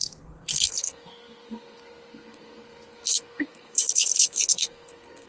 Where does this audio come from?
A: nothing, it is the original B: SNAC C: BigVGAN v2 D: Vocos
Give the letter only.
B